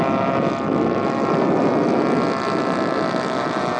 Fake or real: real